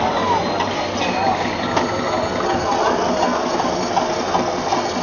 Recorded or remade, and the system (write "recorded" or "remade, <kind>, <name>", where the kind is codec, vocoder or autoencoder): recorded